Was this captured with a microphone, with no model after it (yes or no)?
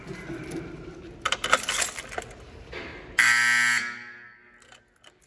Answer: yes